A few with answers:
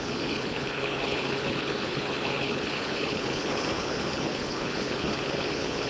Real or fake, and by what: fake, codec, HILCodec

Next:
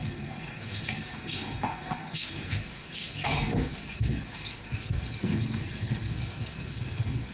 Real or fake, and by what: fake, codec, SNAC